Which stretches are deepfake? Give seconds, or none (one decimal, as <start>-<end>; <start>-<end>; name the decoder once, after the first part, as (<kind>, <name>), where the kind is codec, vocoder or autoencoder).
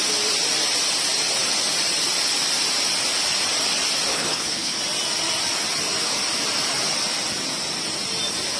4.1-4.8 (codec, HILCodec)